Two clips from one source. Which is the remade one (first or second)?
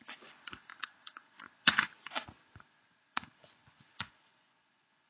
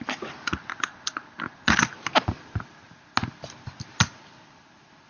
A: first